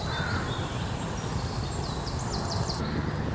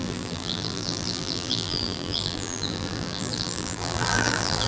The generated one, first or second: second